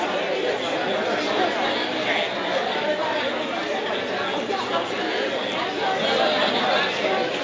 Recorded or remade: recorded